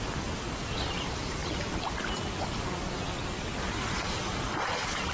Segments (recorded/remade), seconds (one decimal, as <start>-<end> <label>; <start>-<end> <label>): 0.0-5.1 recorded